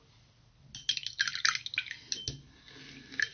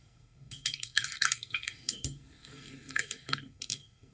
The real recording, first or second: first